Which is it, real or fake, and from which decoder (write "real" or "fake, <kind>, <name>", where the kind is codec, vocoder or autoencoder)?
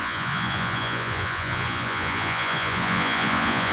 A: fake, vocoder, Vocos